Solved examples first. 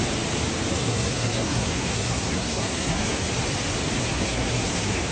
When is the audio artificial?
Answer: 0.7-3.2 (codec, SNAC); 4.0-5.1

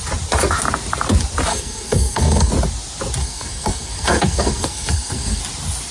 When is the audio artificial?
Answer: 1.5-2.5 (codec, SNAC); 3.2-5.4